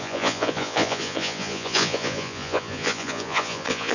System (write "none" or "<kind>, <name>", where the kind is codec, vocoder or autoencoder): vocoder, Vocos